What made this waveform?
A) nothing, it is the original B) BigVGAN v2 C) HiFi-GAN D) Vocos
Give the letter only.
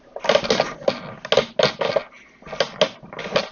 A